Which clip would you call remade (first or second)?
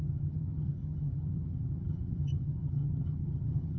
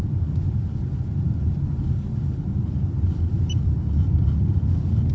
first